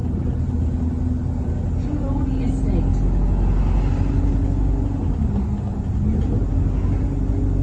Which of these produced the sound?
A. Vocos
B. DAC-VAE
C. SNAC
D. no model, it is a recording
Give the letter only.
D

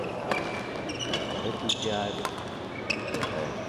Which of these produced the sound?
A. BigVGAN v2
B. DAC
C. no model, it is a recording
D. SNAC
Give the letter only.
C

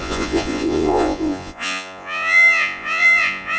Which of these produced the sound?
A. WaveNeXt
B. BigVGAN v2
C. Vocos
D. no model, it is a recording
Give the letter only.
C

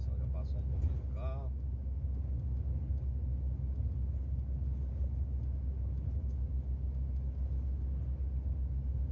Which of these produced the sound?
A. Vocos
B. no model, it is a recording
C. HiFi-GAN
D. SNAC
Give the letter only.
B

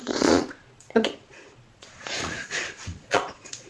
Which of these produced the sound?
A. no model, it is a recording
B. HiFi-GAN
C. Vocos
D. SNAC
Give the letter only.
C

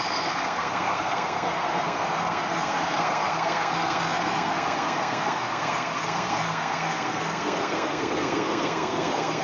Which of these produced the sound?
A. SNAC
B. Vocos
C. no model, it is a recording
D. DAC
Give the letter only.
A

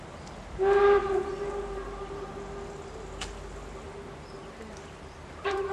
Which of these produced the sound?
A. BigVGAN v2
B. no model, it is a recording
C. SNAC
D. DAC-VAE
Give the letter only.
B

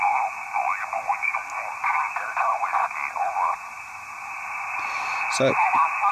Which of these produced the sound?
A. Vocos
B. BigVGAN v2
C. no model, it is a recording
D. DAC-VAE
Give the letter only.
C